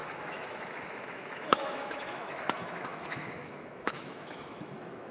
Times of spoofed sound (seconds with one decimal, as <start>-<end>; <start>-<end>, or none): 0.0-5.1